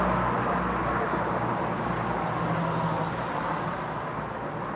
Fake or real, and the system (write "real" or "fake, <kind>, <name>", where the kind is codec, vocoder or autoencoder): real